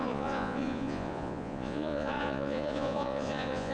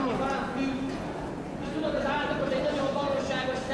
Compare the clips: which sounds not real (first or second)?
first